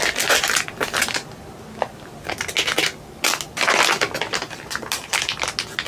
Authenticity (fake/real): real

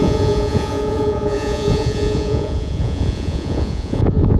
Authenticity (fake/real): fake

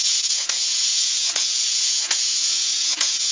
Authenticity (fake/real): fake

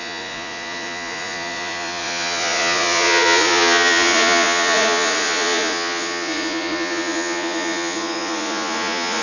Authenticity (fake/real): fake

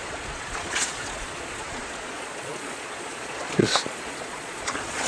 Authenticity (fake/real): fake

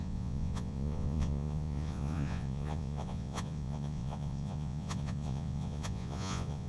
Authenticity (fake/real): fake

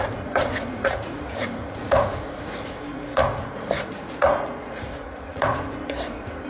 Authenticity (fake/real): fake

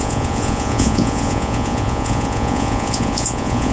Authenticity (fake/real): fake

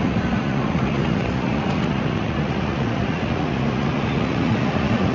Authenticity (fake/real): fake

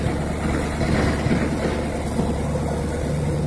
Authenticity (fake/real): real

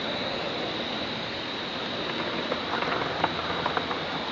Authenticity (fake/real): real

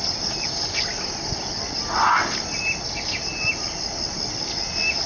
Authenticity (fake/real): real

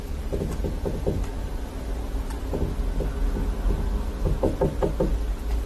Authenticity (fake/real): real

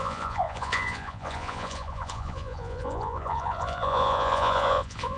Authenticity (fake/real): fake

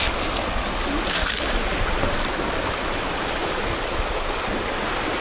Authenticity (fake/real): real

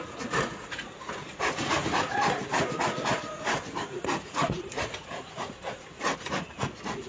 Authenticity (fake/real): fake